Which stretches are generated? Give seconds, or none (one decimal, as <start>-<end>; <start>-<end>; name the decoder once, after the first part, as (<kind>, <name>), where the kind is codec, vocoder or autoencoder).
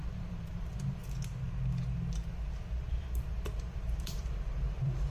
0.0-1.0 (vocoder, BigVGAN v2); 2.9-5.1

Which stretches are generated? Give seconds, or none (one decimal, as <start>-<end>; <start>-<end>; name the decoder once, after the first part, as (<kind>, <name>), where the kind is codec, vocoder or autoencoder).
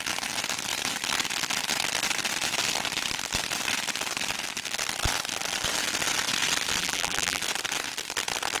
6.8-7.4 (vocoder, BigVGAN v2)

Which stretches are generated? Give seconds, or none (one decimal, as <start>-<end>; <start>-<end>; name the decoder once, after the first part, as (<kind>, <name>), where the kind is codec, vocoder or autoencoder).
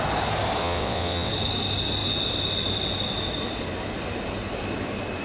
0.6-1.3 (vocoder, WaveNeXt)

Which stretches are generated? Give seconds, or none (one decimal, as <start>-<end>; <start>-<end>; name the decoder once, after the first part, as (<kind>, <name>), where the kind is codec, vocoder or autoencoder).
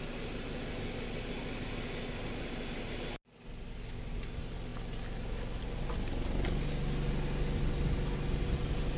none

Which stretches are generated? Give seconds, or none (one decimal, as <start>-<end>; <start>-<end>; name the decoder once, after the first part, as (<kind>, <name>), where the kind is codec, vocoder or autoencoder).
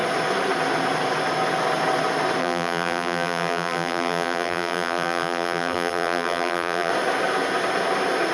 2.4-6.9 (vocoder, BigVGAN v2)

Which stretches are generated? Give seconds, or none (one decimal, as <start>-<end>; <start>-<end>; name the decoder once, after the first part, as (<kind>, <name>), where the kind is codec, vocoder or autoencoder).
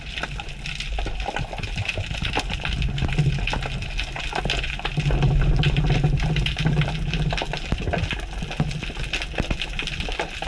none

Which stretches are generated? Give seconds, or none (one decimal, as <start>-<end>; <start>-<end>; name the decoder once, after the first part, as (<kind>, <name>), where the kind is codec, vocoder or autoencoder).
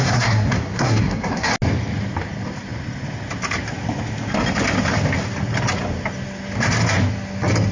0.0-1.5 (codec, SNAC)